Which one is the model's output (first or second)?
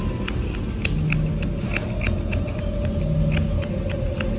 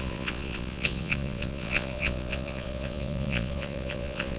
second